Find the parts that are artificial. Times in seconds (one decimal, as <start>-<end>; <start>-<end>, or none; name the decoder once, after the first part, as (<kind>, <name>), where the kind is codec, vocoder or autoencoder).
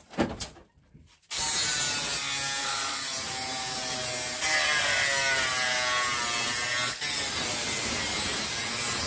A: 2.6-3.1 (vocoder, Vocos)